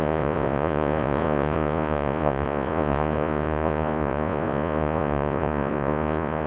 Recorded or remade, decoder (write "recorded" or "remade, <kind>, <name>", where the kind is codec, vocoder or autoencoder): remade, vocoder, Vocos